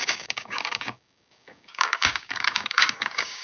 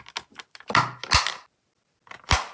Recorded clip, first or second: second